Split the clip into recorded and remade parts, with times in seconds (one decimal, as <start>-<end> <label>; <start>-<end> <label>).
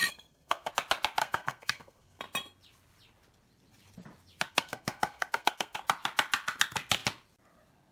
0.0-0.7 remade; 0.7-1.2 recorded; 1.2-2.2 remade; 2.2-4.5 recorded; 4.5-5.8 remade; 5.8-7.9 recorded